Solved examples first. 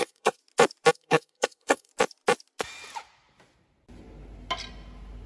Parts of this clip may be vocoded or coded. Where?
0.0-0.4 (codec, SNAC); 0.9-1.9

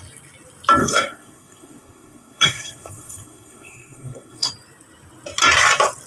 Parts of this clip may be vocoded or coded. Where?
0.8-4.5 (codec, SNAC)